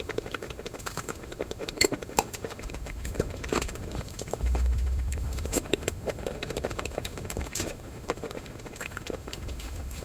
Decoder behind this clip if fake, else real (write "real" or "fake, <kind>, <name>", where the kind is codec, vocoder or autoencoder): fake, autoencoder, DAC-VAE